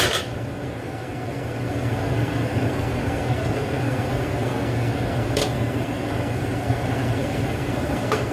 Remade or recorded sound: remade